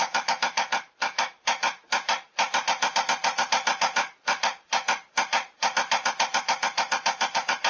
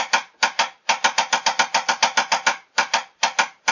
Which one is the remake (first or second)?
first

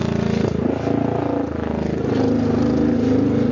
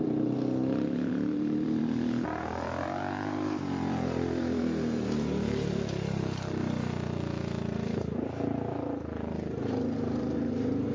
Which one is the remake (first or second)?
second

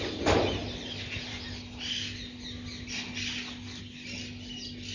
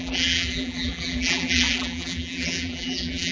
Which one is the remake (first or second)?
second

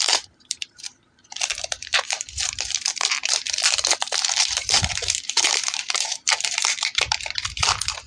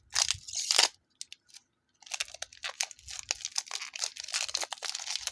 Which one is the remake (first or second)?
first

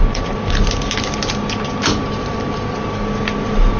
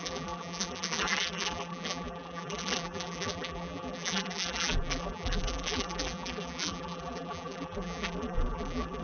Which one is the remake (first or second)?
second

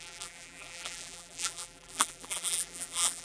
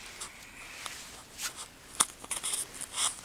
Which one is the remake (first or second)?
first